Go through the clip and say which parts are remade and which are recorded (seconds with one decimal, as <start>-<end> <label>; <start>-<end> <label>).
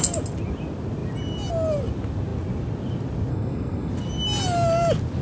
0.0-3.3 recorded; 3.3-3.9 remade; 3.9-5.2 recorded